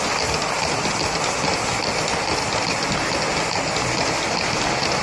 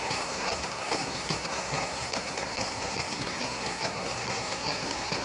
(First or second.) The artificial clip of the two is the second